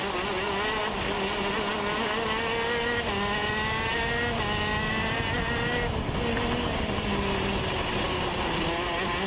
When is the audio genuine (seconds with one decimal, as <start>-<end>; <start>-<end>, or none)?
0.0-9.3